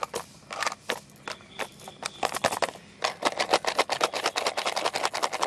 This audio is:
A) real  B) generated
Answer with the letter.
A